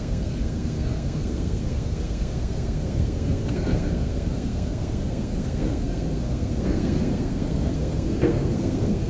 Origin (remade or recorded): remade